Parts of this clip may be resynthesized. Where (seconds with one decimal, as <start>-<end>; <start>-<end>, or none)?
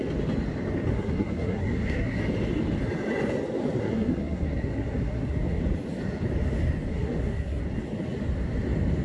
0.9-2.2; 3.8-5.6; 6.9-7.6